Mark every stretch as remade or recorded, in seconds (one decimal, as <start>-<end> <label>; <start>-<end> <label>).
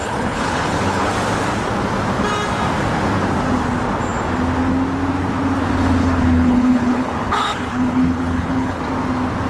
0.0-1.1 remade; 1.1-6.0 recorded; 6.0-8.8 remade; 8.8-9.5 recorded